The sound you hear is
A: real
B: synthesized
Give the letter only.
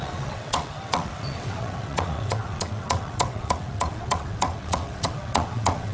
B